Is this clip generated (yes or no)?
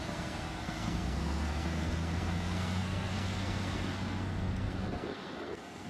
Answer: yes